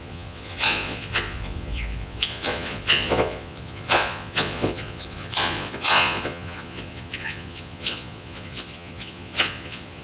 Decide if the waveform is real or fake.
fake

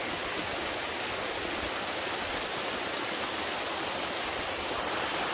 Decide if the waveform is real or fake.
real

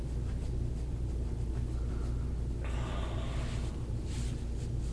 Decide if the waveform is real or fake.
real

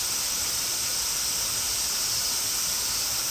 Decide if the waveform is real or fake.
real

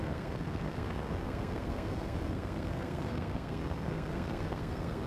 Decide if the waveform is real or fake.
fake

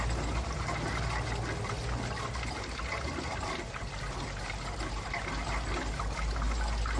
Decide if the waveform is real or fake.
real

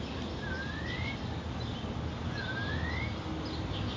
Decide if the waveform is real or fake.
real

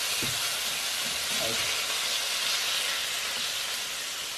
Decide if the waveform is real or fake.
real